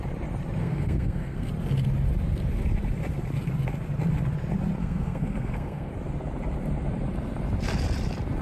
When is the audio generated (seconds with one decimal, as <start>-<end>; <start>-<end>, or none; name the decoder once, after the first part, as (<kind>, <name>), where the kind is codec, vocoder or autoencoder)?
0.6-1.5 (codec, SNAC); 4.8-5.9